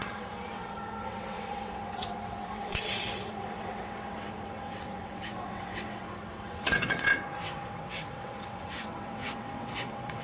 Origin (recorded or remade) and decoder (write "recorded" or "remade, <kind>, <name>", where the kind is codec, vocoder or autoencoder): remade, vocoder, WaveNeXt